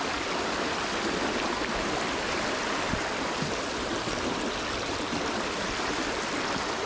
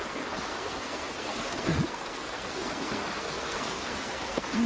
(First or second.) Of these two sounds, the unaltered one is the first